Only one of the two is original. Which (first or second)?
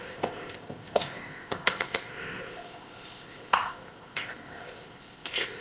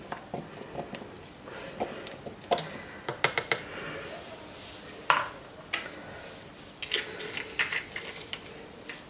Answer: second